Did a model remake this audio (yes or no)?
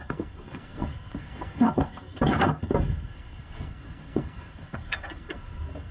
yes